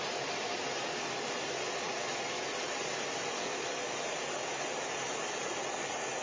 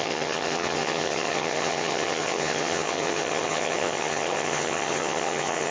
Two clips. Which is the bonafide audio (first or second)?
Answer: first